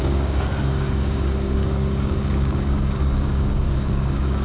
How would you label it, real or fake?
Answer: fake